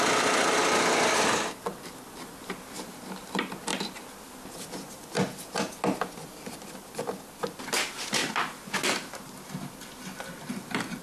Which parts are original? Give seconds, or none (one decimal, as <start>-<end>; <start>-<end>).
0.0-11.0